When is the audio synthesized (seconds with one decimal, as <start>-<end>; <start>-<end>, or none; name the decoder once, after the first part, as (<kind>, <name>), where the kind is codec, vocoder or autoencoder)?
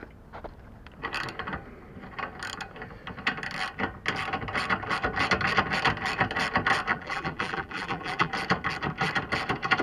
6.9-8.3 (vocoder, BigVGAN v2)